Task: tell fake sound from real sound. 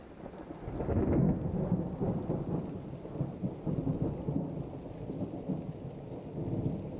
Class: real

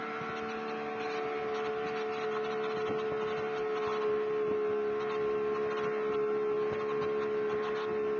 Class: real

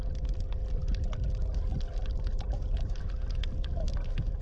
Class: real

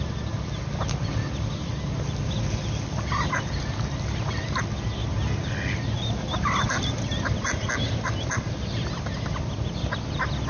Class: real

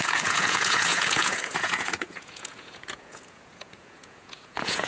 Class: fake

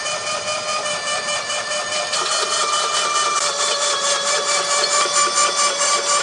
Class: fake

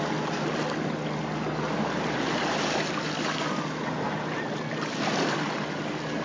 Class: real